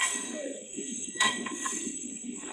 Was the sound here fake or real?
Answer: fake